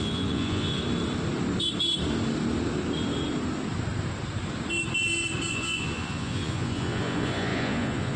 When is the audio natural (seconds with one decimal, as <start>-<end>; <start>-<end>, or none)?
0.8-5.5